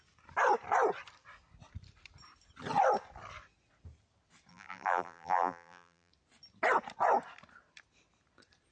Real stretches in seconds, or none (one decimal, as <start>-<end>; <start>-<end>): 0.0-4.5; 6.1-8.7